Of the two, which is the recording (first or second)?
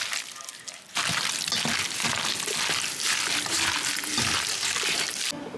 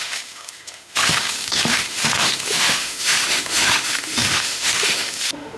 first